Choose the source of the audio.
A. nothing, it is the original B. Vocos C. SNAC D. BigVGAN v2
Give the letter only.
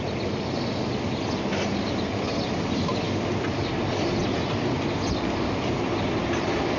A